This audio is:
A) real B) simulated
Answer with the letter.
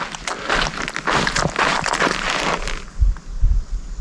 A